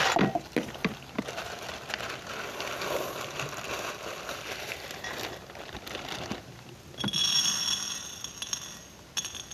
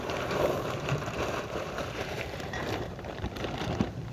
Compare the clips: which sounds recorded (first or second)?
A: first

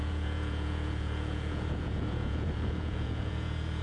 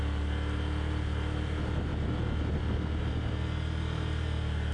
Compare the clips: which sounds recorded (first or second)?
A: second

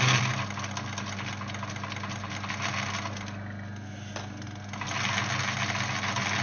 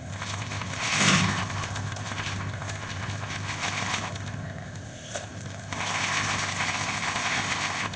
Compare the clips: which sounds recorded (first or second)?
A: first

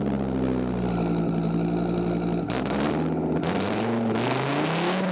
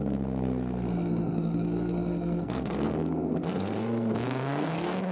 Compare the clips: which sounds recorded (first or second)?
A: first